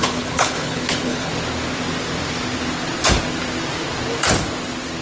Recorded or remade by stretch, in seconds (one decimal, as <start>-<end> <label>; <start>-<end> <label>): 0.0-1.3 remade; 1.3-5.0 recorded